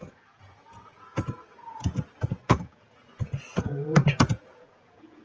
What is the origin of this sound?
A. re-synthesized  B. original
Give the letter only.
A